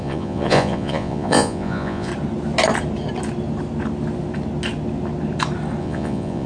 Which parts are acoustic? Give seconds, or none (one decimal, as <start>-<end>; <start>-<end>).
2.1-5.8